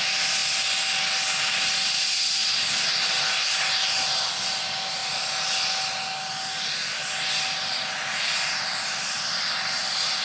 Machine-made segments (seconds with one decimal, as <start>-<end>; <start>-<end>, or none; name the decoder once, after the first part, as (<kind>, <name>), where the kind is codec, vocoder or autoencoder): none